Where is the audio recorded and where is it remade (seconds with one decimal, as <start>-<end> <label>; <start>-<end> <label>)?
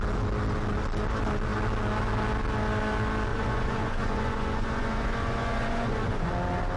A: 0.0-3.3 recorded; 3.3-6.3 remade; 6.3-6.8 recorded